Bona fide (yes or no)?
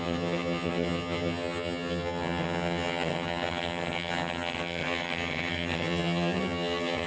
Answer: no